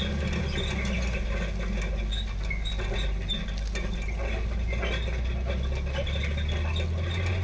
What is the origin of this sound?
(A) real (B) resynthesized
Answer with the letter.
A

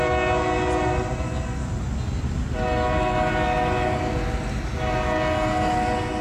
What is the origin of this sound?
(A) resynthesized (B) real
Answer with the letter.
B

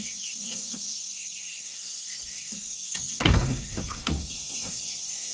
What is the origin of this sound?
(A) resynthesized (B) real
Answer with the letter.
A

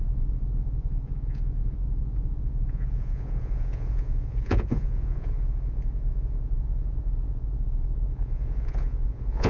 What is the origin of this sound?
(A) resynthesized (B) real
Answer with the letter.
A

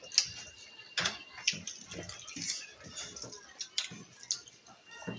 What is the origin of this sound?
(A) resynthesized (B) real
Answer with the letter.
B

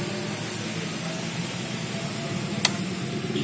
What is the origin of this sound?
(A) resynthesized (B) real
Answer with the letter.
B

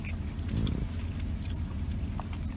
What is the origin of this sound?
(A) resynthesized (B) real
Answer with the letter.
A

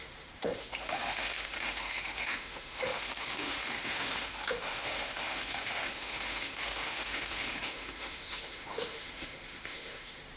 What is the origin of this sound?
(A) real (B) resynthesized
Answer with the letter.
B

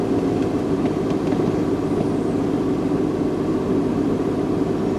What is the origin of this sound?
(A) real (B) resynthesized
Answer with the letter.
A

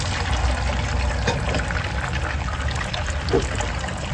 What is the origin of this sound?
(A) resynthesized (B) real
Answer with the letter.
B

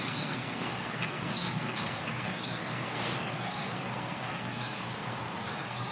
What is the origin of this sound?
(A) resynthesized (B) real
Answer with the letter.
A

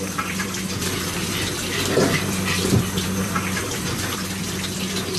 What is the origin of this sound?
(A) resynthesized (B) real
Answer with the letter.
A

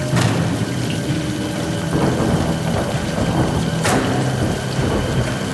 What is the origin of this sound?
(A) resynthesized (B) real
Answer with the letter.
B